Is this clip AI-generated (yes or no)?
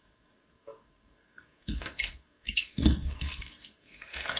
yes